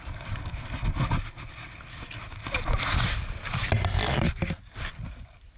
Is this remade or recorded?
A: recorded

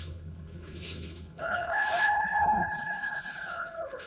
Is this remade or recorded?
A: remade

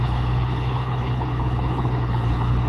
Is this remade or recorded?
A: remade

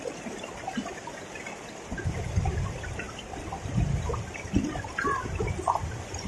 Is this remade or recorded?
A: recorded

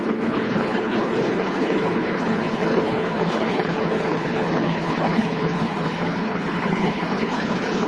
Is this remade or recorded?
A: remade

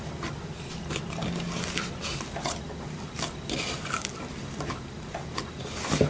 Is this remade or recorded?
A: recorded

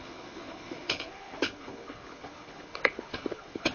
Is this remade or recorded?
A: remade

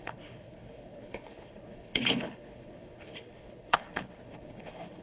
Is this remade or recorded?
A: remade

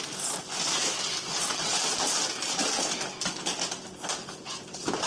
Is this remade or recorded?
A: recorded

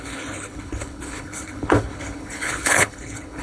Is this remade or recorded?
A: remade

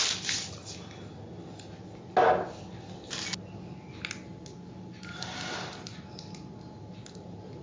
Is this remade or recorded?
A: recorded